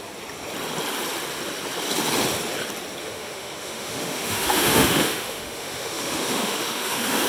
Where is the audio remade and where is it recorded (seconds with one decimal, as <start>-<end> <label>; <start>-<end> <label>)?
0.0-3.0 recorded; 3.0-7.3 remade